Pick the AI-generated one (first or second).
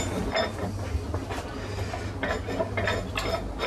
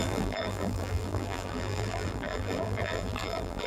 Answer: second